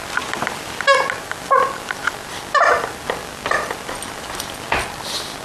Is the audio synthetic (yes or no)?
no